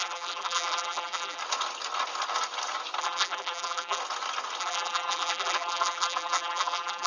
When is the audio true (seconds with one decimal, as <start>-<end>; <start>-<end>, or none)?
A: 1.4-3.0; 4.0-4.6